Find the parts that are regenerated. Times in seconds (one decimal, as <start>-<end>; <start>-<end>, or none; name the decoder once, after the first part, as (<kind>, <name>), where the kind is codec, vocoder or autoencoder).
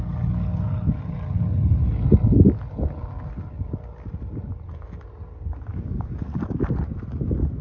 5.7-6.6 (codec, DAC)